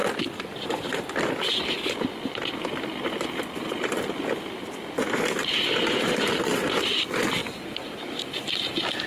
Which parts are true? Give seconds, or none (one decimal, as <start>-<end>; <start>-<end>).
0.0-4.8; 5.5-9.1